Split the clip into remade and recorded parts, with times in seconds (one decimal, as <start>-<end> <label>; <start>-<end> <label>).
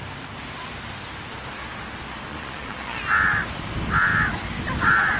0.0-2.3 recorded; 2.3-3.0 remade; 3.0-5.2 recorded